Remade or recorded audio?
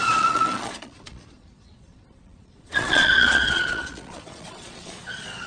remade